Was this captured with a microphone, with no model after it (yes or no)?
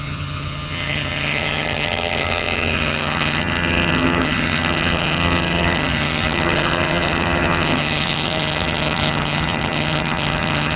no